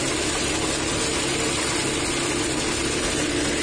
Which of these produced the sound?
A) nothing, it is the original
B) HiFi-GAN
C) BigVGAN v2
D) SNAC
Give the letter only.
A